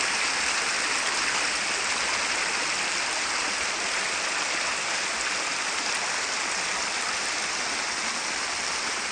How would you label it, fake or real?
real